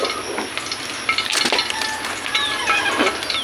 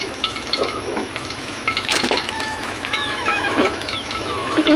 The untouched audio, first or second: first